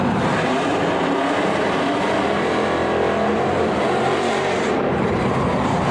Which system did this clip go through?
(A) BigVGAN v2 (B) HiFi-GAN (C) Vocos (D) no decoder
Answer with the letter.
A